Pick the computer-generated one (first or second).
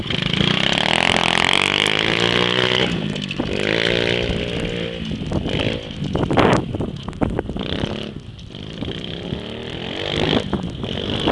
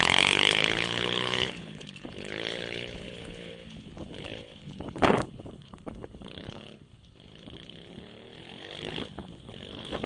second